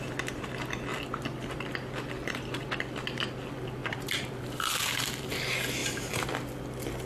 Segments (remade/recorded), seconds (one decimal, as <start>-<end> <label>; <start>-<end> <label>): 0.0-3.8 recorded; 3.8-5.3 remade; 5.3-5.8 recorded; 5.8-6.3 remade; 6.3-7.1 recorded